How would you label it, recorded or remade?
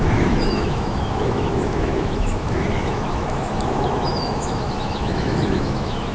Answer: remade